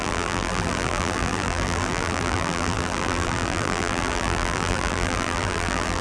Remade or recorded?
remade